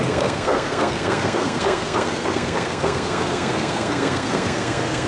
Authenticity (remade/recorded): remade